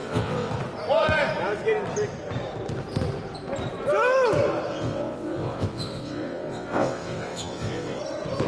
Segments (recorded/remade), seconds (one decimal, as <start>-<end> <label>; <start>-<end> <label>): 0.0-0.5 remade; 0.5-4.7 recorded; 4.7-8.0 remade; 8.0-8.5 recorded